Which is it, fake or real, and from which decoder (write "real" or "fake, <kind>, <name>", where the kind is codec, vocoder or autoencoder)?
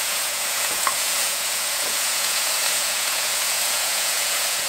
fake, vocoder, Vocos